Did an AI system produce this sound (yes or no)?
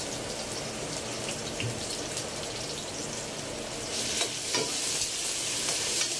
no